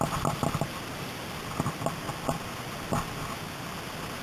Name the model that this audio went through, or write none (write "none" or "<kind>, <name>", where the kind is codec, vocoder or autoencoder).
none